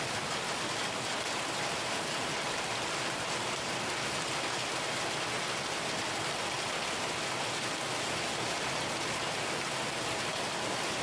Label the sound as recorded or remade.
recorded